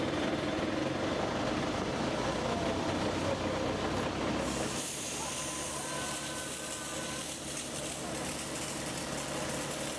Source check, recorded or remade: recorded